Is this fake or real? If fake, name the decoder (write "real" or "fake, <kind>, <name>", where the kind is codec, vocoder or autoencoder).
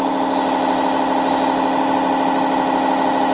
real